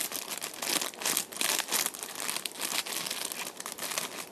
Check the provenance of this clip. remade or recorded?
recorded